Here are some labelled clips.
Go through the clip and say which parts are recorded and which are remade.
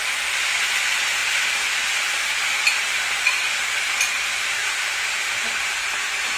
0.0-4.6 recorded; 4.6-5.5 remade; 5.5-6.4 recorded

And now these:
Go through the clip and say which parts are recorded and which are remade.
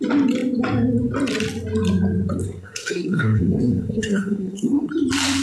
0.0-2.4 recorded; 2.4-4.9 remade; 4.9-5.4 recorded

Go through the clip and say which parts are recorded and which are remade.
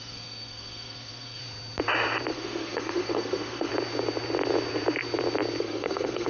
0.0-1.4 remade; 1.4-2.3 recorded; 2.3-3.7 remade; 3.7-5.6 recorded; 5.6-6.3 remade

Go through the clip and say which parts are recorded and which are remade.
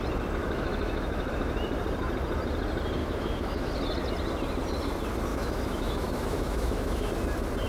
0.0-0.4 recorded; 0.4-1.3 remade; 1.3-3.0 recorded; 3.0-3.7 remade; 3.7-5.3 recorded; 5.3-7.1 remade; 7.1-7.7 recorded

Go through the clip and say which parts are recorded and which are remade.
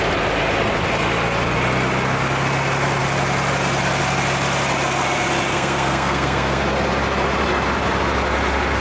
0.0-5.5 recorded; 5.5-6.6 remade; 6.6-8.8 recorded